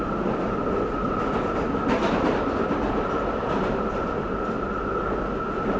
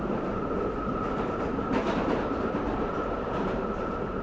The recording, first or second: first